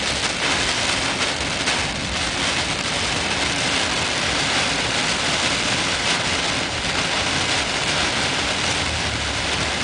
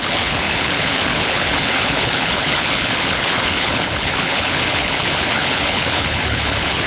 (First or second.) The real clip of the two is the first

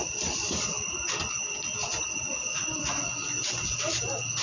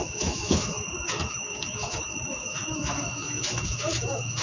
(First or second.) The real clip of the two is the first